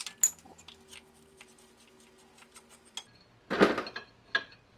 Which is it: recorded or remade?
recorded